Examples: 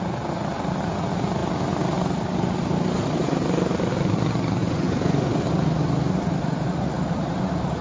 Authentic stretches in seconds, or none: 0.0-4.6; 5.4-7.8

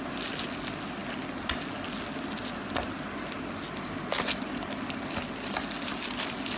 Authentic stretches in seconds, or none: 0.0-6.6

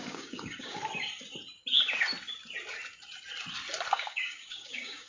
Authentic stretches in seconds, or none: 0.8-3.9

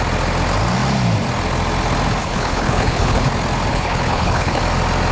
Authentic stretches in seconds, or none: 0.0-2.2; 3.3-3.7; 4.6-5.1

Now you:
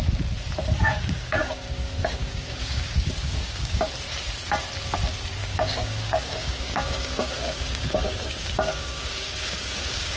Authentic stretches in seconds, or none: 0.0-0.9; 3.9-5.4

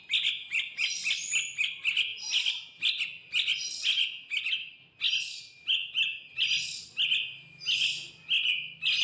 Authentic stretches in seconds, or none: 0.0-9.0